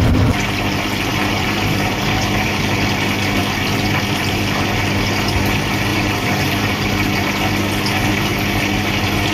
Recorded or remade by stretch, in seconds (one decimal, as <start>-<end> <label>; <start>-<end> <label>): 0.0-1.1 recorded; 1.1-2.6 remade; 2.6-5.9 recorded; 5.9-6.9 remade; 6.9-9.3 recorded

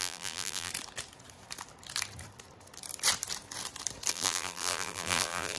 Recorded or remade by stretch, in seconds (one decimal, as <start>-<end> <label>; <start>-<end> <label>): 0.0-0.7 remade; 0.7-4.1 recorded; 4.1-5.6 remade